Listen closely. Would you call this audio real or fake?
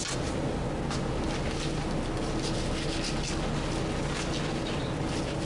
real